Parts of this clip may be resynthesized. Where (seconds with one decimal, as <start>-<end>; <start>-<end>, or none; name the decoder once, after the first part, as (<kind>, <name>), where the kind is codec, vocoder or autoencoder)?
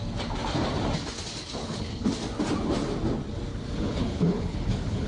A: 1.6-2.1 (codec, HILCodec); 3.5-5.1